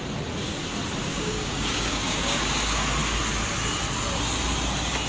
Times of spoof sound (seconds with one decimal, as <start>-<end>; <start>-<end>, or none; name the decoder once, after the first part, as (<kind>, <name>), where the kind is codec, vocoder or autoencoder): 1.1-2.5 (codec, DAC)

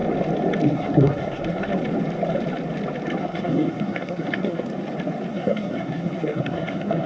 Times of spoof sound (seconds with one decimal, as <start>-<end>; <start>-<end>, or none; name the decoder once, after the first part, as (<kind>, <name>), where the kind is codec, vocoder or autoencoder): 0.7-1.7 (codec, SNAC); 3.2-4.7; 5.3-7.1

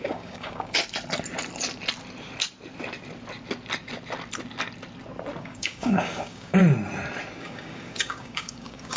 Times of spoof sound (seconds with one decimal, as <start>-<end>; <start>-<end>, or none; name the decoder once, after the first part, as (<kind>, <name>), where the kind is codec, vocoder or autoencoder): 0.0-0.8 (codec, DAC); 5.4-6.6; 7.4-9.0

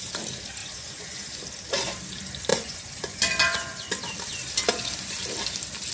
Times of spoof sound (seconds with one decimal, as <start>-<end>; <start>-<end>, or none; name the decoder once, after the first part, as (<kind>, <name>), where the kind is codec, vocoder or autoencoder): 0.6-1.4 (vocoder, Vocos); 2.5-3.9